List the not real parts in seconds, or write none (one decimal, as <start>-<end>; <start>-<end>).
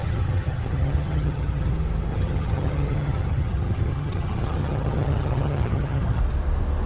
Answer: 0.0-1.7; 2.1-6.2